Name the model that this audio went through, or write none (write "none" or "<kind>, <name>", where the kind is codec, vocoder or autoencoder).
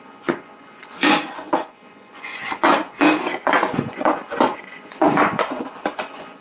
vocoder, Vocos